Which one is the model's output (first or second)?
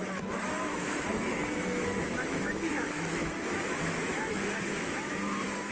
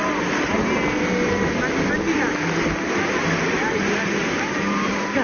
first